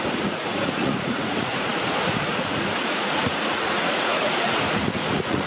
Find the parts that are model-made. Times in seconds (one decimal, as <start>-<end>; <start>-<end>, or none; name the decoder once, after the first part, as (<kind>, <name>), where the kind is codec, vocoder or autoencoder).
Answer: 0.0-5.5 (vocoder, Vocos)